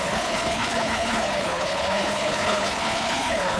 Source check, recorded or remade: remade